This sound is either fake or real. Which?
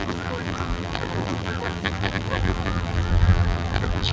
fake